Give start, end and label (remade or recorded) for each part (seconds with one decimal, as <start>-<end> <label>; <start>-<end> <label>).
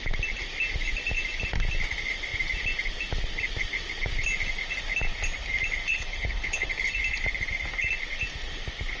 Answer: 0.0-5.9 recorded; 5.9-6.9 remade; 6.9-9.0 recorded